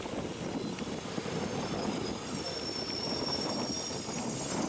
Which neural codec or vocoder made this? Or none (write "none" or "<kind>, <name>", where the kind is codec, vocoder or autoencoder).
none